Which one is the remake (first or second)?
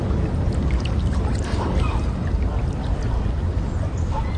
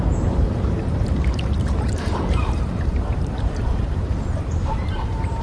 second